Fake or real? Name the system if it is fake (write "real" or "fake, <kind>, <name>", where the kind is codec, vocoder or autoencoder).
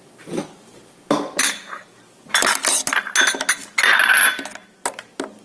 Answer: real